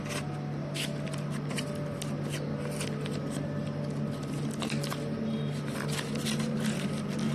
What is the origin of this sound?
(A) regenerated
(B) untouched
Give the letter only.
A